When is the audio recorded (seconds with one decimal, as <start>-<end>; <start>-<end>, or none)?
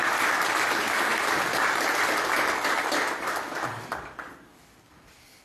0.0-5.4